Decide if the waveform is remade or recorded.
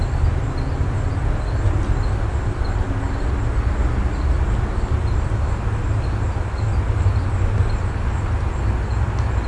recorded